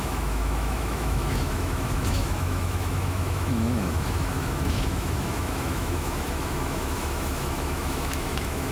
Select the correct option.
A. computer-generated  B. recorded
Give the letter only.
A